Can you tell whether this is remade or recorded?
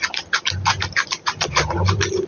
recorded